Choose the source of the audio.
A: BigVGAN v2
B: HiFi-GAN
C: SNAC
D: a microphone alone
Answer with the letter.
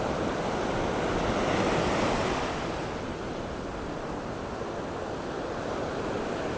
D